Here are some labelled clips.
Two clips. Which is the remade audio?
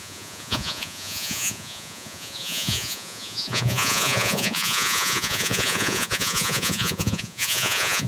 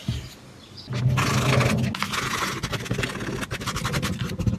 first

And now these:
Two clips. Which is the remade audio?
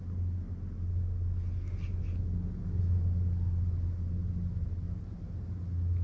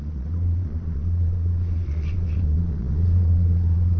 second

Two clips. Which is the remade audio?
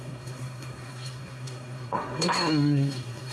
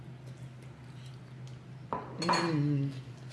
first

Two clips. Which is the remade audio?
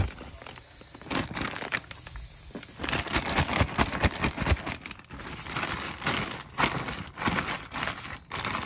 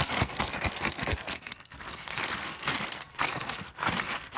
second